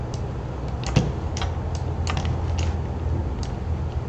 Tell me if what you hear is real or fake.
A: real